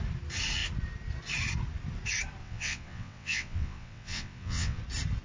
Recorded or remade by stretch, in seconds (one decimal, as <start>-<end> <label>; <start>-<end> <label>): 0.0-2.4 recorded; 2.4-4.8 remade; 4.8-5.2 recorded